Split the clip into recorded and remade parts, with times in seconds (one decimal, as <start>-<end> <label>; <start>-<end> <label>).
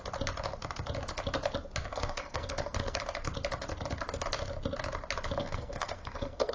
0.0-1.9 recorded; 1.9-3.0 remade; 3.0-5.4 recorded; 5.4-6.5 remade